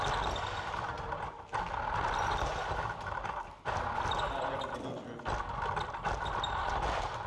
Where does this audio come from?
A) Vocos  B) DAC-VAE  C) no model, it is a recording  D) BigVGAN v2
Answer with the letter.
C